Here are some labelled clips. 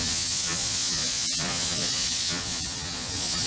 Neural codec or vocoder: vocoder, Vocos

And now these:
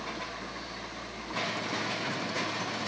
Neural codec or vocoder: none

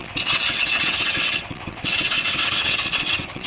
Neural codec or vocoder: vocoder, WaveNeXt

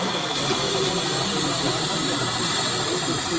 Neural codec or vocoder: none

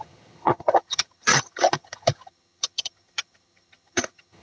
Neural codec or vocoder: vocoder, HiFi-GAN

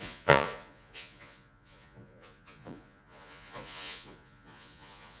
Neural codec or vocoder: vocoder, Vocos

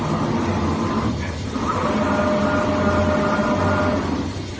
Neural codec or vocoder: none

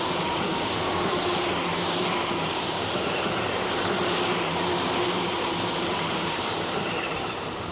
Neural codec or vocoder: vocoder, BigVGAN v2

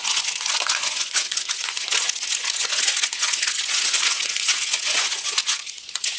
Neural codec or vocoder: vocoder, Vocos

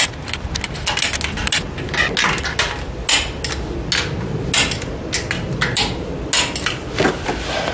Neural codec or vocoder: none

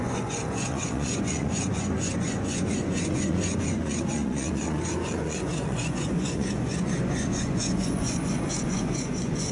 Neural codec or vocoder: vocoder, Vocos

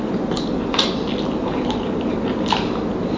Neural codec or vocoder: none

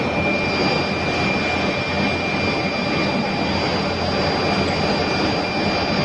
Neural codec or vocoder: none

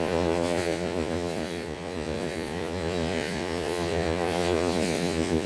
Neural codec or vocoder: vocoder, Vocos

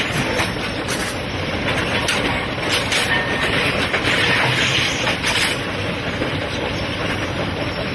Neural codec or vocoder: none